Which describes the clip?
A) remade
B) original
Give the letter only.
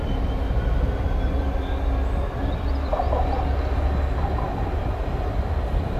B